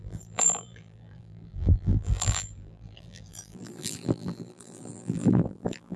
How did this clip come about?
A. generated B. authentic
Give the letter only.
A